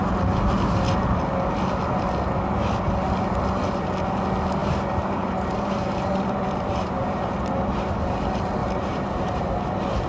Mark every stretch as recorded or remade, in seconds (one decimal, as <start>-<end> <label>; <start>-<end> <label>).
0.0-4.6 recorded; 4.6-7.8 remade; 7.8-8.6 recorded; 8.6-9.4 remade; 9.4-10.1 recorded